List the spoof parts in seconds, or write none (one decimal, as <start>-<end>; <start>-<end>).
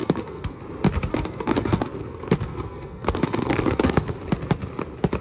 0.0-0.6; 1.1-4.2